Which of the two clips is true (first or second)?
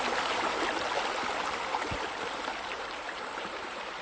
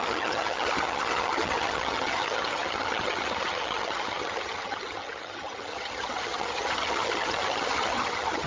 first